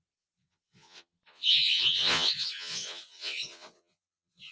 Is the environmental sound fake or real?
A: fake